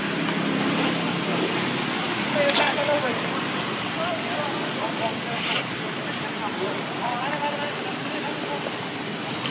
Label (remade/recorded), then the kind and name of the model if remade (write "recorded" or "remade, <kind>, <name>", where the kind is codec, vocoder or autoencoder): recorded